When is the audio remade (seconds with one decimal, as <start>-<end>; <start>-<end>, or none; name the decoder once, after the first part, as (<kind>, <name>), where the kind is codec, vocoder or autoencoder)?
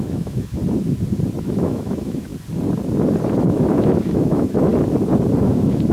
0.0-0.6 (autoencoder, DAC-VAE); 1.4-2.3; 3.3-4.7; 5.4-5.9